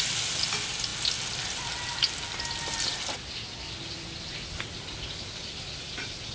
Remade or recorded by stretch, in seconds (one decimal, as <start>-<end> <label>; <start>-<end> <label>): 0.0-6.3 recorded